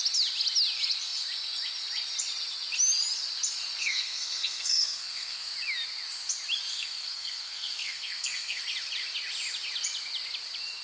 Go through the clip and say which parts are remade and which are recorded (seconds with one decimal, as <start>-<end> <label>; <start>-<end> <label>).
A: 0.0-3.8 recorded; 3.8-5.5 remade; 5.5-6.7 recorded; 6.7-8.6 remade; 8.6-10.8 recorded